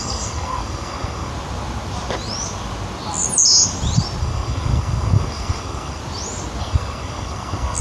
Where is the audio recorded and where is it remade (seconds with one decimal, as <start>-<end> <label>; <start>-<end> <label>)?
0.0-1.3 remade; 1.3-4.2 recorded; 4.2-6.0 remade; 6.0-6.6 recorded; 6.6-7.8 remade